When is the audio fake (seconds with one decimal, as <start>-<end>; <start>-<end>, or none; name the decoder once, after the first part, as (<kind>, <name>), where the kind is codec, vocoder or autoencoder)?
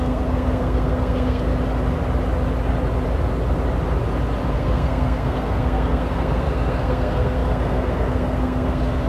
0.0-1.5 (codec, SNAC); 4.5-9.1